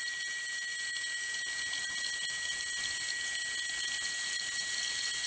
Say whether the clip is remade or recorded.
recorded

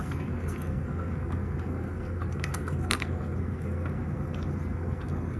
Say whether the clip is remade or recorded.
remade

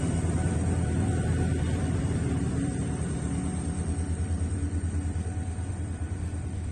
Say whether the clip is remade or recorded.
remade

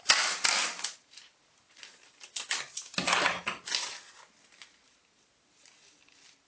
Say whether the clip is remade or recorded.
recorded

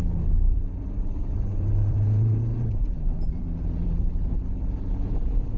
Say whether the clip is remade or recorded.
remade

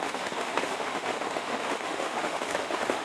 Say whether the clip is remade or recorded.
remade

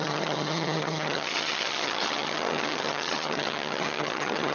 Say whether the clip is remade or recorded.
remade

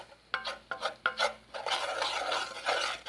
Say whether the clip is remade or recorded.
recorded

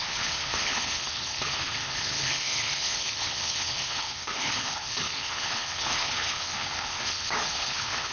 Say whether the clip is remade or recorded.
remade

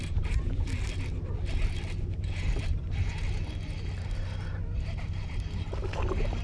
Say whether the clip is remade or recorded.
recorded